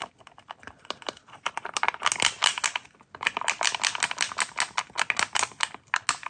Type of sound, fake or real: real